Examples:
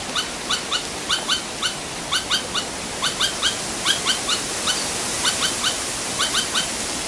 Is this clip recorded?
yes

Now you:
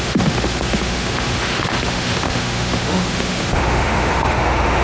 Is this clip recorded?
no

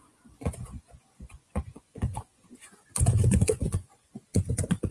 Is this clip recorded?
no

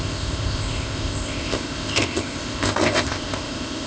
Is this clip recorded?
no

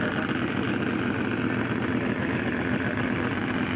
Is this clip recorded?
yes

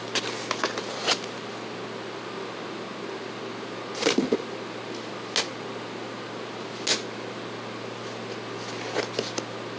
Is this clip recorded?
yes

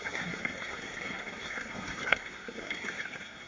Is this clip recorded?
no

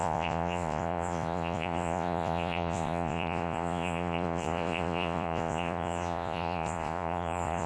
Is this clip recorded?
no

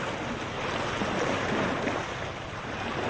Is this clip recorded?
yes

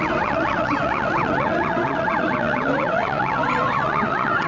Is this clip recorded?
no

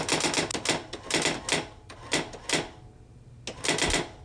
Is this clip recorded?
yes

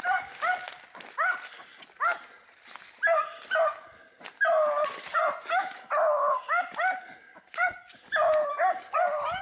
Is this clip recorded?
yes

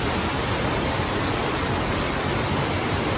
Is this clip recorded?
yes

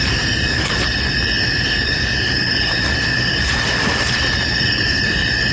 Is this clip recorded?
no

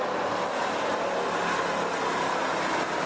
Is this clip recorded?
yes